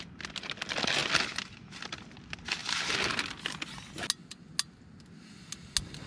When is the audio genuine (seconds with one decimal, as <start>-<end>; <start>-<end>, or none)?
0.0-6.1